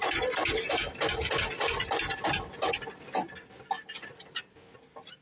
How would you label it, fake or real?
real